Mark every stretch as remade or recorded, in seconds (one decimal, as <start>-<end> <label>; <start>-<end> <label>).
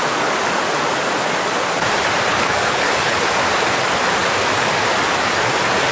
0.0-2.3 recorded; 2.3-3.2 remade; 3.2-5.9 recorded